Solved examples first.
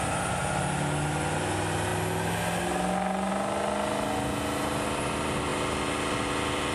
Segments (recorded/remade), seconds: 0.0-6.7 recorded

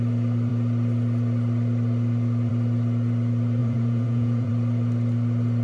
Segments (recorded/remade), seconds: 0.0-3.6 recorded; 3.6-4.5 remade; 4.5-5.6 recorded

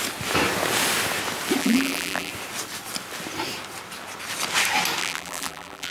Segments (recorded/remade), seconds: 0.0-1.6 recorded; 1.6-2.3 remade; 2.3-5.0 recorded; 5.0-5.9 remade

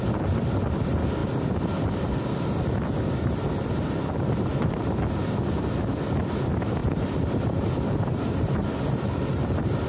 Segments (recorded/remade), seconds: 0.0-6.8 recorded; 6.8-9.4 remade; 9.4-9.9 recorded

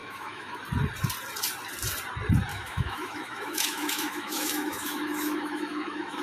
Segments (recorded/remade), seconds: 0.0-0.6 remade; 0.6-2.5 recorded; 2.5-6.2 remade